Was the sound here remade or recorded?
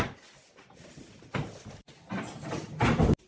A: recorded